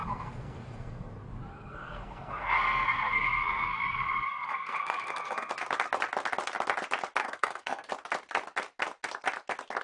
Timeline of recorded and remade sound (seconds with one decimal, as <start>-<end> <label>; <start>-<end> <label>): 0.0-1.1 remade; 1.1-1.5 recorded; 1.5-5.5 remade; 5.5-7.2 recorded; 7.2-7.9 remade; 7.9-9.8 recorded